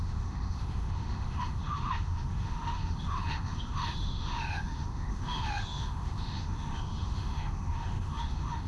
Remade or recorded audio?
remade